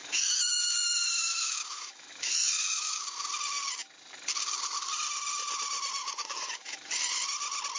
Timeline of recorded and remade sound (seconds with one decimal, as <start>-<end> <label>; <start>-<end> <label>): 0.0-3.3 remade; 3.3-6.0 recorded; 6.0-7.0 remade; 7.0-7.8 recorded